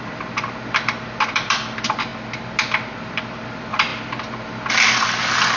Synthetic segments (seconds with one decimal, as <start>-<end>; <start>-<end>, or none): 0.0-2.1; 3.0-5.6